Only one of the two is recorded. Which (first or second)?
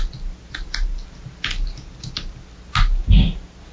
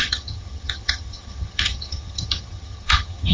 first